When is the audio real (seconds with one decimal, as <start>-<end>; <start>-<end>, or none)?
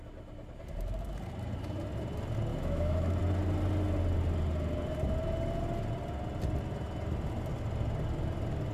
0.0-2.5; 3.2-8.7